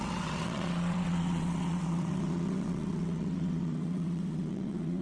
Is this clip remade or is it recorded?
remade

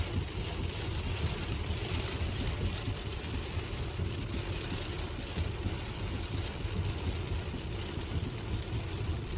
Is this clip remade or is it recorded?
remade